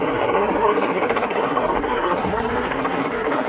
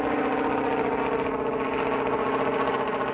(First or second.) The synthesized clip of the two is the first